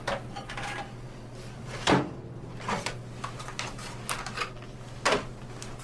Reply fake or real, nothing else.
real